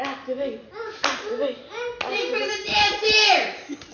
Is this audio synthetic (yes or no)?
no